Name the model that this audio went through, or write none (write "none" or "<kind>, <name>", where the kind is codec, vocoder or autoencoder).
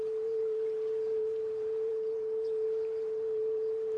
vocoder, BigVGAN v2